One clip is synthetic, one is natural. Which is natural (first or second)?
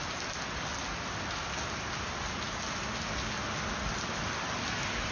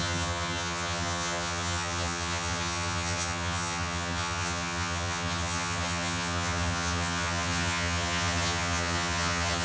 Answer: first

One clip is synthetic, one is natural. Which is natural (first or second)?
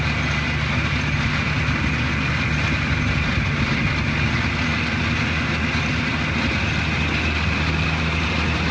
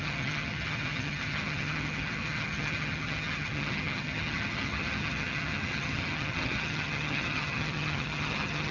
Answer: first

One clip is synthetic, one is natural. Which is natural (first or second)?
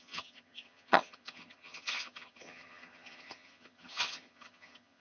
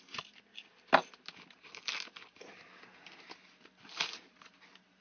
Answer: second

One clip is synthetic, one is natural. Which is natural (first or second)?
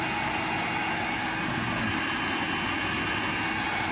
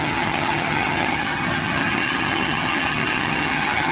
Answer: first